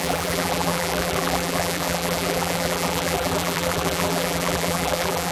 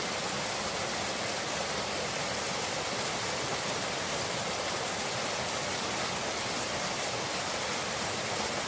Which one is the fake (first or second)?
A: first